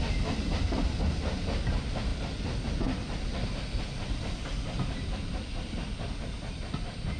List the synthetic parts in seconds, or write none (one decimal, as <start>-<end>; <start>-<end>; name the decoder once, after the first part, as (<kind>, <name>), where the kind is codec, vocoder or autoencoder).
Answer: 2.1-2.6 (vocoder, BigVGAN v2)